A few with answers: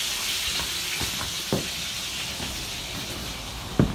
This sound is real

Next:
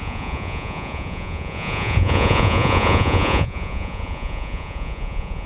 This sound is fake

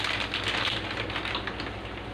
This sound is real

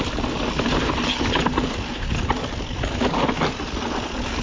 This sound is real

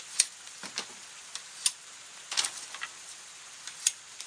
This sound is real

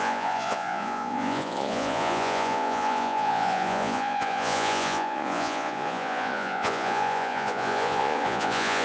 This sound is fake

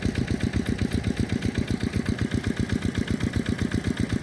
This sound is real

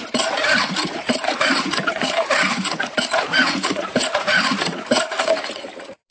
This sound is fake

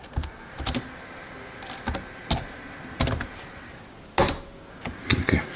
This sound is real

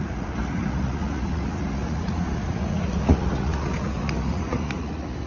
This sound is fake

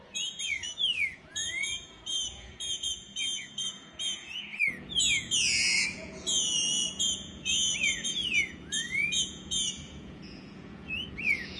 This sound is fake